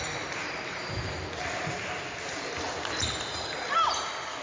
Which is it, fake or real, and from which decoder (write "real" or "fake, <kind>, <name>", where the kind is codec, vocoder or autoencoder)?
real